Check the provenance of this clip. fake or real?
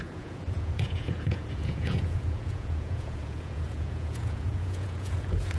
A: fake